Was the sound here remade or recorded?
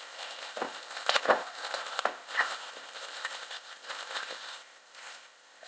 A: remade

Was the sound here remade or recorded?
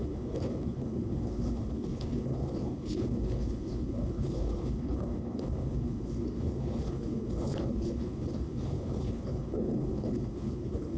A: remade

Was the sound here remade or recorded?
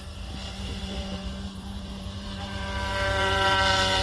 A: remade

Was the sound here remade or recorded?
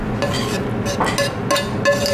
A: recorded